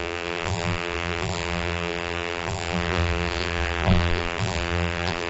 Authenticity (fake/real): fake